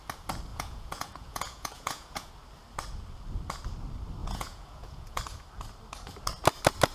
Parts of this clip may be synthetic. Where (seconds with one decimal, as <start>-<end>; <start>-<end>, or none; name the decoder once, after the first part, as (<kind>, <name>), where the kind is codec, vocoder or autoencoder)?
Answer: 0.5-2.3 (vocoder, Vocos); 4.2-5.2

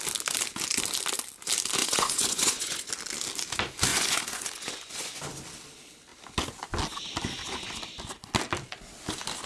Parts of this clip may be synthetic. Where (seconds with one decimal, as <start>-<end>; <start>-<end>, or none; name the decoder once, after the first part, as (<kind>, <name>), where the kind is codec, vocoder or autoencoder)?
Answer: 1.8-2.9 (vocoder, Vocos); 3.9-5.2

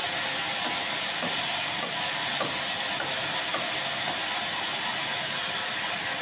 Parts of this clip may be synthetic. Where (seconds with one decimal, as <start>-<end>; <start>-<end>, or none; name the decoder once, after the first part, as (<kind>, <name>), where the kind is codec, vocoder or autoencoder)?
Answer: none

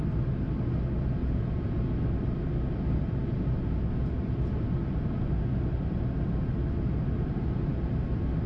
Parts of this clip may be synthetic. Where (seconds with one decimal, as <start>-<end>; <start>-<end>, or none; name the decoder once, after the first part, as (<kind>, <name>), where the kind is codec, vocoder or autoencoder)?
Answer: 1.2-1.9 (vocoder, Vocos)

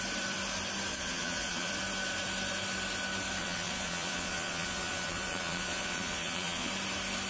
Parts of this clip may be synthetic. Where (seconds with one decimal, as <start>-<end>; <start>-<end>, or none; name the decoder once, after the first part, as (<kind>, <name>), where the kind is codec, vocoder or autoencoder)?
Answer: 0.9-1.7 (vocoder, Vocos); 3.4-6.7